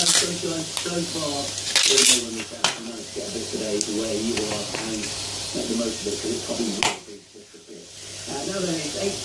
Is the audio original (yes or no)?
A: yes